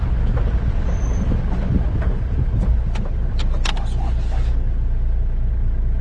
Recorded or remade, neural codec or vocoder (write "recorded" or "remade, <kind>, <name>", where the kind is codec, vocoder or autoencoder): recorded